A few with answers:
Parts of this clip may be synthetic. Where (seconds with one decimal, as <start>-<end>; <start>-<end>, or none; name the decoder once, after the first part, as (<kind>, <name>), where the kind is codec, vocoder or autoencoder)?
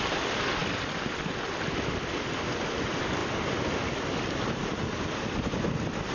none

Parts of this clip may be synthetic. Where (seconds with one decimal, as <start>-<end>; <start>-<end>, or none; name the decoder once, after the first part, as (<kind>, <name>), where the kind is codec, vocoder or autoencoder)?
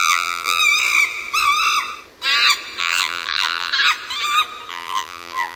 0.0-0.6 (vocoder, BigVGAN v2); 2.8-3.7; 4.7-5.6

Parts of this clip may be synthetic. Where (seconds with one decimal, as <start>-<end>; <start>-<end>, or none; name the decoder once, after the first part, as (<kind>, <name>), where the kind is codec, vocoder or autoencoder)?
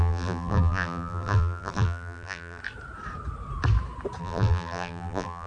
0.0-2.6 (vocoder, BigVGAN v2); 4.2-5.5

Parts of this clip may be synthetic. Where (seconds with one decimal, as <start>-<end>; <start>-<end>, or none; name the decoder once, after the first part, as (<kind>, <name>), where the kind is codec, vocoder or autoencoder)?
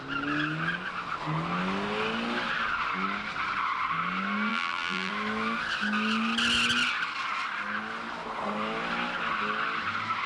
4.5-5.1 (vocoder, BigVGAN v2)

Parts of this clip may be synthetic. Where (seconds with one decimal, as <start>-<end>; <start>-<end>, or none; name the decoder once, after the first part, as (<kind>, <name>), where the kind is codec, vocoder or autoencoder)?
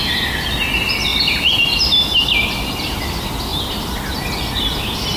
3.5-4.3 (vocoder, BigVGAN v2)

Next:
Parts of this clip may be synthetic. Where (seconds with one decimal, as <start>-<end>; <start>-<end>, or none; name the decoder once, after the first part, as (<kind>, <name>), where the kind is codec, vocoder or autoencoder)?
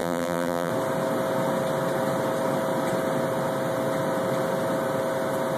0.0-0.7 (vocoder, BigVGAN v2)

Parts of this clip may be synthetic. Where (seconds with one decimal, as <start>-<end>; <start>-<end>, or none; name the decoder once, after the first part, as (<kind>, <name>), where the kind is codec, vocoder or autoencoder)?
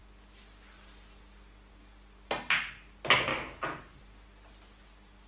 none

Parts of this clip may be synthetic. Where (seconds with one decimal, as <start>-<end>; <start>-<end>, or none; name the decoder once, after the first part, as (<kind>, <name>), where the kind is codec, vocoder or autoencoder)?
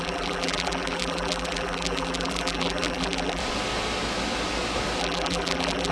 0.0-3.4 (vocoder, BigVGAN v2); 5.0-5.9